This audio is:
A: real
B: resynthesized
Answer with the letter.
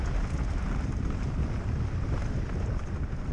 A